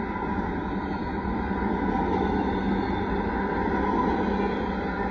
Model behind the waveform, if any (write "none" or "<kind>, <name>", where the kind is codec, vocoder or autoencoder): none